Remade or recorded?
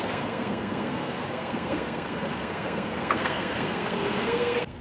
remade